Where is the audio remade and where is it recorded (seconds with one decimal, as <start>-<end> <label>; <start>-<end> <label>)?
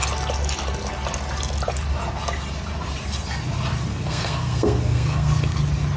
0.0-3.9 recorded; 3.9-5.6 remade; 5.6-6.0 recorded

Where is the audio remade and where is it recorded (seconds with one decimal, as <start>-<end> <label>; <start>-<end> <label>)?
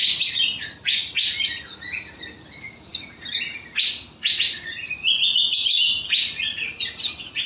0.0-7.5 recorded